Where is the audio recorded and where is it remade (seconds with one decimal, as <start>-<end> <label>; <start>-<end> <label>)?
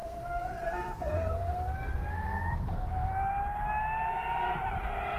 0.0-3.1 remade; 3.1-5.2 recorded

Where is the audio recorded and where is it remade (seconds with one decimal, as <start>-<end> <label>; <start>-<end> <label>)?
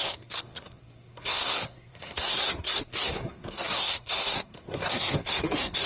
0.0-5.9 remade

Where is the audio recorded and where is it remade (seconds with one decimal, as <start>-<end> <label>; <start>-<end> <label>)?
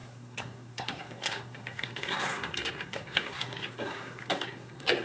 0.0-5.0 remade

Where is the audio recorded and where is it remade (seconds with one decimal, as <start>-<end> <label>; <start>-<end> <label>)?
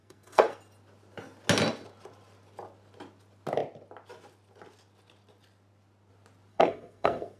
0.0-0.6 remade; 0.6-6.5 recorded; 6.5-7.4 remade